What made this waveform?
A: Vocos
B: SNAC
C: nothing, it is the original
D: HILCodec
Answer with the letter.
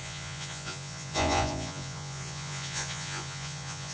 A